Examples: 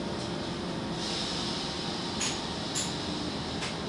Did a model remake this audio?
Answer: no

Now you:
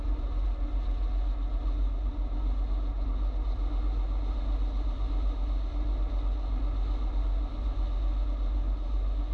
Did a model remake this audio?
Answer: no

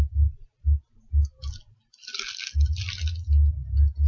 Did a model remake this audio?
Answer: no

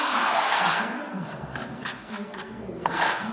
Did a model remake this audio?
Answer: yes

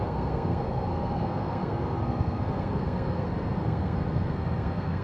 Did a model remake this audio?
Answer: yes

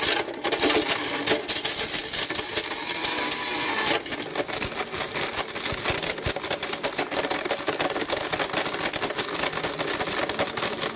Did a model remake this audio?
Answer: no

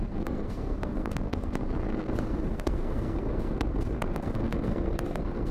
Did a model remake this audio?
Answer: yes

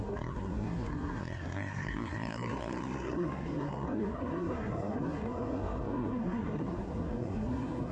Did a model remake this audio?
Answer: yes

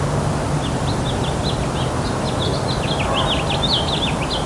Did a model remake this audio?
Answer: no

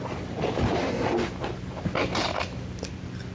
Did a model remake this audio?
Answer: no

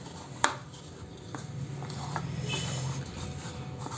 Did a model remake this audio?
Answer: no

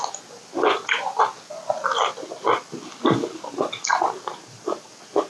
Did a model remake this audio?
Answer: no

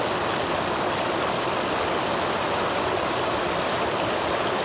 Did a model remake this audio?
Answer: no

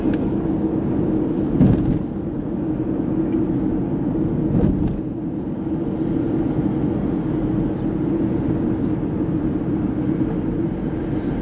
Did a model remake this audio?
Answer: no